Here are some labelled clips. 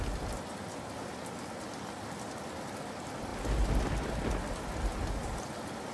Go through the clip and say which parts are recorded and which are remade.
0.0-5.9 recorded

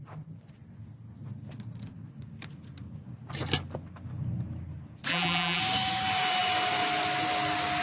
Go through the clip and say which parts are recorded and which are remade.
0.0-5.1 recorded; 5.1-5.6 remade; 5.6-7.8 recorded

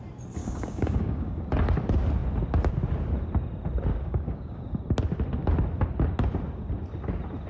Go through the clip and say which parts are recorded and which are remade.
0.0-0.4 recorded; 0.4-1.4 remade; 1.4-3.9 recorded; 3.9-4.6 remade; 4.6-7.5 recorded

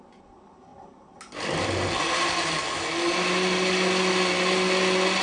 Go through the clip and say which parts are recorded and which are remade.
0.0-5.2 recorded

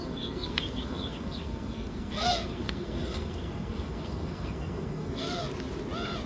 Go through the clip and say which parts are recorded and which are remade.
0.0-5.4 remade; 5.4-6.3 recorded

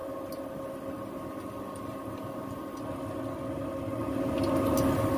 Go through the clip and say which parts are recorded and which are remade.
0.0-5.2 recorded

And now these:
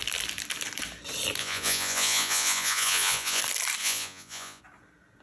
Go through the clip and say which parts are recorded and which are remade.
0.0-1.4 recorded; 1.4-3.4 remade; 3.4-3.8 recorded; 3.8-4.6 remade; 4.6-5.2 recorded